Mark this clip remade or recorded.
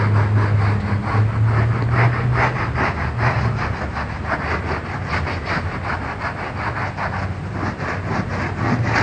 recorded